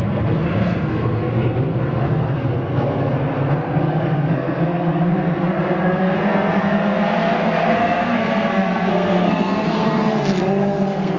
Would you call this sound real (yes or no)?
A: no